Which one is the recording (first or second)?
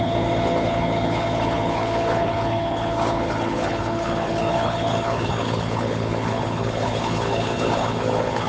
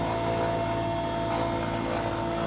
second